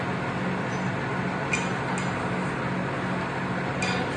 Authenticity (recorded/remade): recorded